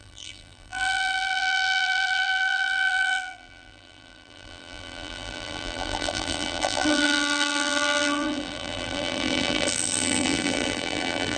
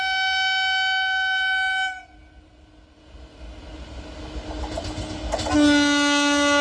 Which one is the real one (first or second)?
second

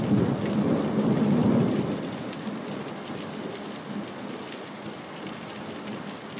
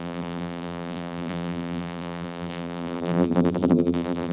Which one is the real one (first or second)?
first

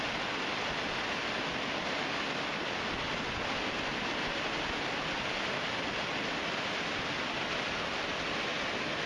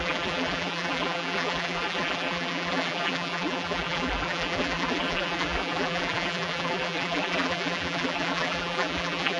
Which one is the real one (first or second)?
first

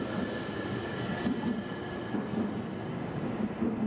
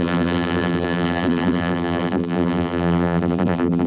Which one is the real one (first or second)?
first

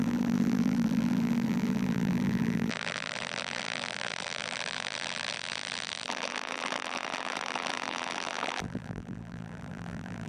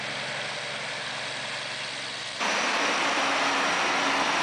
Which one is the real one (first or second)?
second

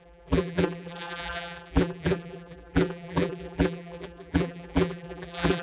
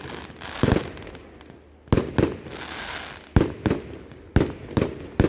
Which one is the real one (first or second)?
second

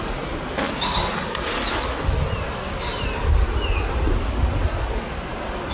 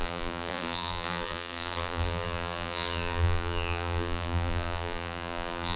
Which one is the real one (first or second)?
first